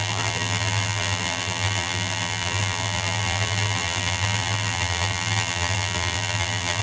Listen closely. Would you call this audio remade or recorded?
remade